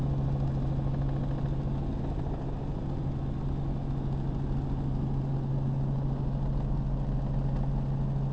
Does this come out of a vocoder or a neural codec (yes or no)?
no